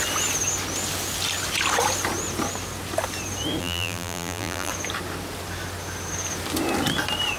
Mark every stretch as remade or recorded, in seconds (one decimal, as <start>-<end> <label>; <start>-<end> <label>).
0.0-3.6 recorded; 3.6-4.7 remade; 4.7-7.4 recorded